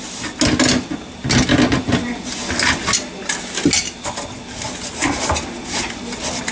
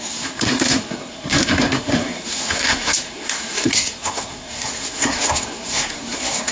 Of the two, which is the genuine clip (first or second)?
first